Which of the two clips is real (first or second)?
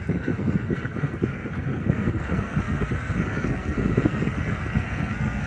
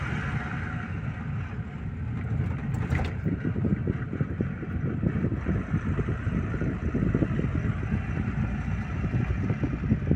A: second